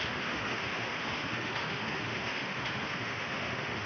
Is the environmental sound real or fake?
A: fake